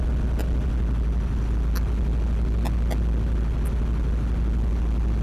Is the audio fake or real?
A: real